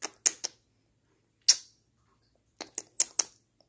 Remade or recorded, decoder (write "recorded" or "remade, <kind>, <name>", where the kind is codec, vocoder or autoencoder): recorded